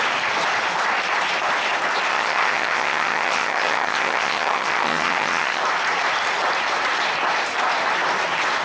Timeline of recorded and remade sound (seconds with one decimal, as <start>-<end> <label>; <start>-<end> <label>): 0.0-2.1 recorded; 2.1-5.6 remade; 5.6-8.6 recorded